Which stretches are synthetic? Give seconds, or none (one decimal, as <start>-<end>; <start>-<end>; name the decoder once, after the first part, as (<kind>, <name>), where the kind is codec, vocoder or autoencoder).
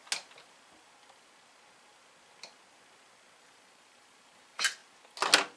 3.4-4.8 (vocoder, BigVGAN v2)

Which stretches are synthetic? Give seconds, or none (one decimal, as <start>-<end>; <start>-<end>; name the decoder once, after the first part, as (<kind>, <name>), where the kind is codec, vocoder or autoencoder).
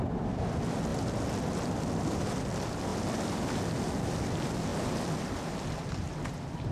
none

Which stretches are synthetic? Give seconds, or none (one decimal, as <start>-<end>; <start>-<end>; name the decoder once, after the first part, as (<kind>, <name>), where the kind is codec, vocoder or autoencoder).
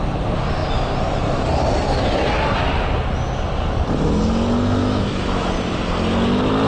4.8-5.5 (autoencoder, DAC-VAE)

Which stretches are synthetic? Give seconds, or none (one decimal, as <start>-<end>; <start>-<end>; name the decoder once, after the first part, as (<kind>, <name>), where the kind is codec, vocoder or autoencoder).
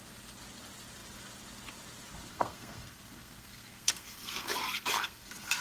2.3-5.6 (codec, SNAC)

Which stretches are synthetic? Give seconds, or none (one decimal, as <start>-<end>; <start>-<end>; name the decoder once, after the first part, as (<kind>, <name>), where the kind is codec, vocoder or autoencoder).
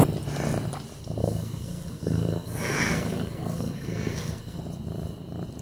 1.2-4.6 (codec, SNAC)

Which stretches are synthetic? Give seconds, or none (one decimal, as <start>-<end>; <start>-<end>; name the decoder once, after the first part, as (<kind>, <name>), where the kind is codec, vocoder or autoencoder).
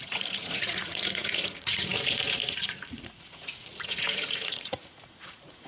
0.0-5.7 (vocoder, Vocos)